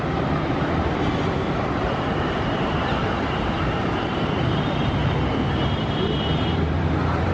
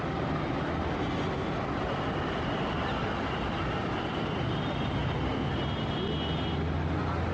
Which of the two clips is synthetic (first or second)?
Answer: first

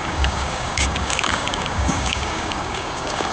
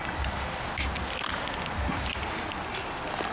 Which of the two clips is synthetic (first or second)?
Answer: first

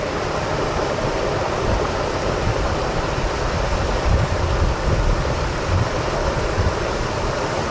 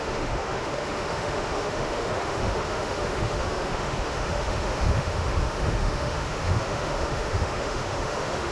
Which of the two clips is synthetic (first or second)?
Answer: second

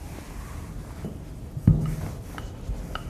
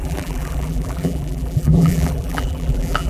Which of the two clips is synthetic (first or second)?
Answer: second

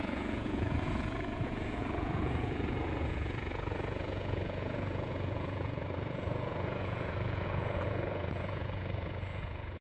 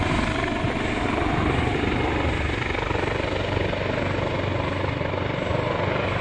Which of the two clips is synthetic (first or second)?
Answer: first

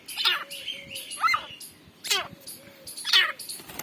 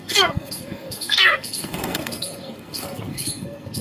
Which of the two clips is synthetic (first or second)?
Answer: second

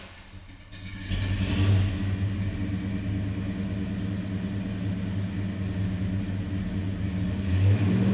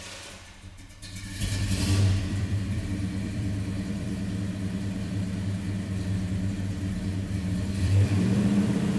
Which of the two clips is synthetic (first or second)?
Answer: second